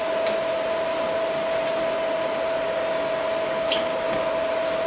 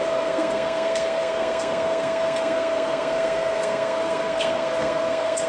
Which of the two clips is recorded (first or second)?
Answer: first